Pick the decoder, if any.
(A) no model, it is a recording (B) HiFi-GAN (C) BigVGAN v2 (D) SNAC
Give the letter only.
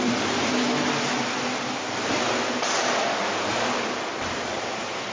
C